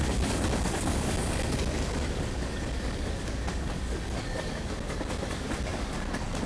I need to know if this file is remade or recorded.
remade